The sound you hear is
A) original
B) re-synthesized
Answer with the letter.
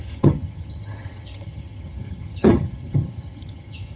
B